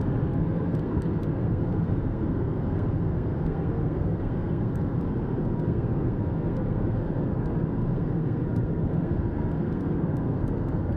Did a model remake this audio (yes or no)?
yes